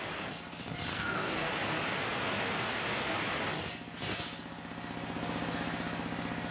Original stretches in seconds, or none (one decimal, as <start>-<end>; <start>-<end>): 0.0-0.9; 1.5-6.5